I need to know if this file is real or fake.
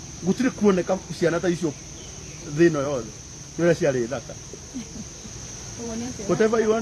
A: fake